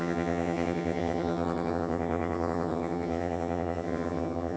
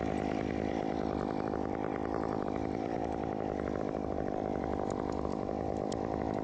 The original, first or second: second